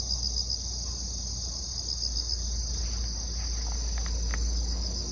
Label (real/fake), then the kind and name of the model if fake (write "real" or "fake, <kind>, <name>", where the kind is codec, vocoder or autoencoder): real